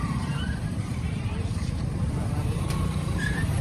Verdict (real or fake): fake